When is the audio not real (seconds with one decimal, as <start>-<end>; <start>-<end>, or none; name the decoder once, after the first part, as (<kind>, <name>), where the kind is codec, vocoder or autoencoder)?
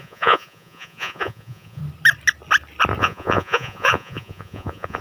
0.0-1.8 (vocoder, Vocos); 3.0-5.0